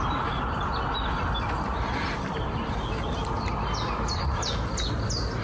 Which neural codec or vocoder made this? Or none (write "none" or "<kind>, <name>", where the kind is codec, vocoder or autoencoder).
none